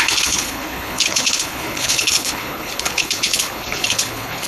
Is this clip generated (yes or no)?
yes